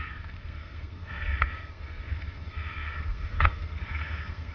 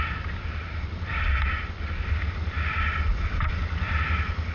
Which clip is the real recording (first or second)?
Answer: second